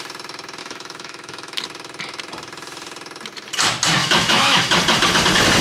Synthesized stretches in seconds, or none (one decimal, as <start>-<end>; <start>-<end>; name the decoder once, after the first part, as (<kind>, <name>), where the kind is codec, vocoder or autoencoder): 0.6-1.6 (autoencoder, DAC-VAE); 4.0-4.6